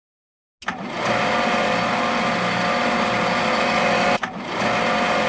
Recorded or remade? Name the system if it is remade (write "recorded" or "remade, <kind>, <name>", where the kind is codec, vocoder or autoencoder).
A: recorded